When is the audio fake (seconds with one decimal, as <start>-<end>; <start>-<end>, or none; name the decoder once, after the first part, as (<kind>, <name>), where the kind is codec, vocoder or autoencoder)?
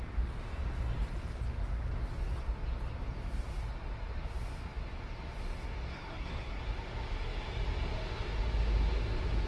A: 5.9-6.6 (codec, SNAC)